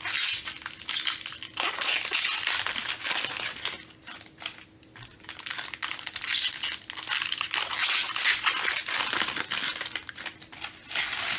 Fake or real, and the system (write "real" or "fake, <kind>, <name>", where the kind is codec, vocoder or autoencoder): real